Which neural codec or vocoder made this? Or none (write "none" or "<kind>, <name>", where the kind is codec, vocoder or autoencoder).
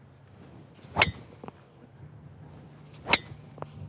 none